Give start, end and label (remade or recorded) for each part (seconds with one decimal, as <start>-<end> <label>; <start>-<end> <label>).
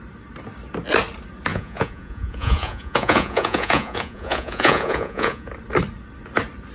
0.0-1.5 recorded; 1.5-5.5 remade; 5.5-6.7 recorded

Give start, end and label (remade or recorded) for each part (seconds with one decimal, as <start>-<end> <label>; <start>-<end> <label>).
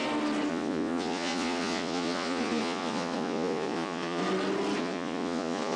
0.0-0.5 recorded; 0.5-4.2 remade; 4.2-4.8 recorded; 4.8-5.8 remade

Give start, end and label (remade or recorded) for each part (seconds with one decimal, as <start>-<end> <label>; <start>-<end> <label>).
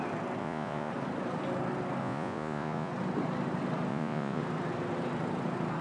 0.0-0.4 recorded; 0.4-0.9 remade; 0.9-2.0 recorded; 2.0-2.9 remade; 2.9-3.9 recorded; 3.9-4.4 remade; 4.4-5.8 recorded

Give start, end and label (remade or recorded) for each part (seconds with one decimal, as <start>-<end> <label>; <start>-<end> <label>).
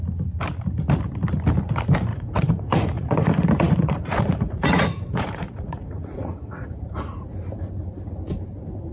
0.0-2.1 recorded; 2.1-7.1 remade; 7.1-8.9 recorded